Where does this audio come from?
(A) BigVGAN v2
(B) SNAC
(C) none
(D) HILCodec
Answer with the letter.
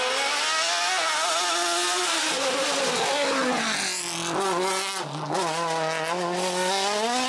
C